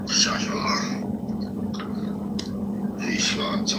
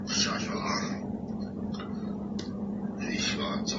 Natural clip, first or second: second